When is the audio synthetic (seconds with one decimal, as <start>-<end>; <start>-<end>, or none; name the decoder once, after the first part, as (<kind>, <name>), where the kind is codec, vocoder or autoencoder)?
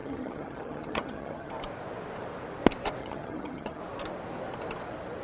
0.0-1.5 (vocoder, HiFi-GAN); 3.0-3.8